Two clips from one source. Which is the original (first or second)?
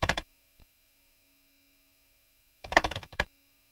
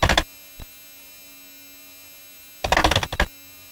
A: second